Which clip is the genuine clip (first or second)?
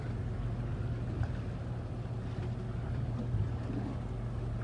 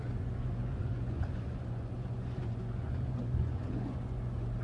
first